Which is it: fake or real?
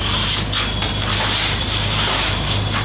real